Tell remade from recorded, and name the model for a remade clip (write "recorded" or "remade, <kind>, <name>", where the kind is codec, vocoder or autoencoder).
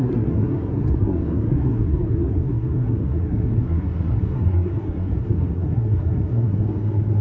remade, codec, SNAC